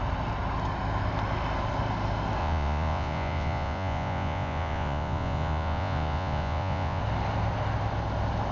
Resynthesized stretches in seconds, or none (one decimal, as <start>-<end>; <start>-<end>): 2.4-7.0